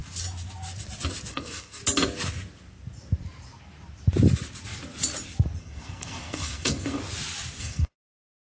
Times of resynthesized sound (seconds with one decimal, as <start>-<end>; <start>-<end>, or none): 1.3-1.8; 5.6-7.0; 7.6-8.4